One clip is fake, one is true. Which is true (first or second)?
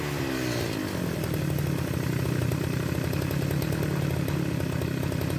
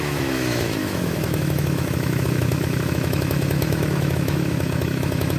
first